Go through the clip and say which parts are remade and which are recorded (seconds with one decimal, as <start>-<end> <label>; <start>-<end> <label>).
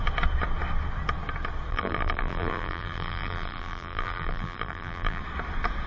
0.0-1.7 recorded; 1.7-5.2 remade; 5.2-5.9 recorded